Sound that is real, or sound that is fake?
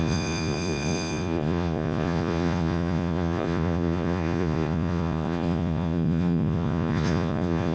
fake